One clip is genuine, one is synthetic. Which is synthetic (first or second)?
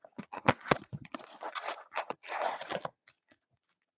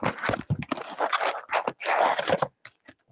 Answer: first